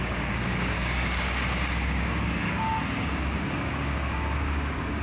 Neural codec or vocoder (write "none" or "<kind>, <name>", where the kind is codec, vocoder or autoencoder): codec, DAC